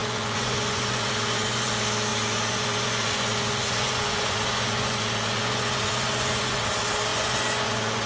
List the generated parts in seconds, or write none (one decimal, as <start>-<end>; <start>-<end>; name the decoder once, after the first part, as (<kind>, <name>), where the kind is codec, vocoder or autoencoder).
0.0-1.7 (vocoder, Vocos); 2.1-6.6; 7.1-8.1